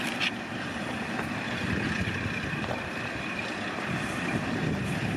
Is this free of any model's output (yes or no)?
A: no